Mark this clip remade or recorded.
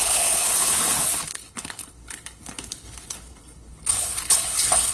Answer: remade